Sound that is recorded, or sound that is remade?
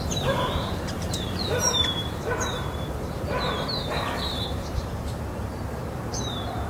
remade